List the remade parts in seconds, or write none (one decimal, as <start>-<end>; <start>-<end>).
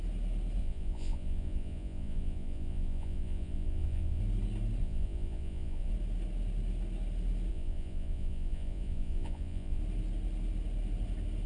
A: 0.6-4.2; 4.8-5.9; 7.5-9.8